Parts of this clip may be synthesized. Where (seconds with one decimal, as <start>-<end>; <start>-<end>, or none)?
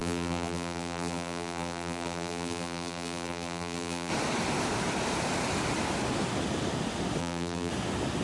0.0-4.1; 7.2-7.7